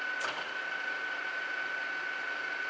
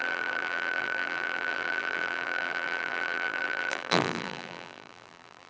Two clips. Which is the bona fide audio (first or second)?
first